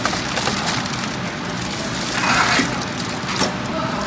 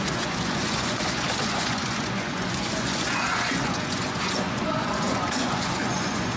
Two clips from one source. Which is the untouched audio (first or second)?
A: first